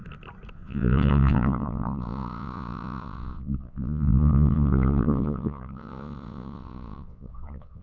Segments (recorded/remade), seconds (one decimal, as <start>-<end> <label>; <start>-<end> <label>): 0.0-0.5 recorded; 0.5-7.8 remade